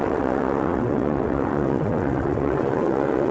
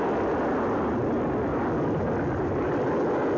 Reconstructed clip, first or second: first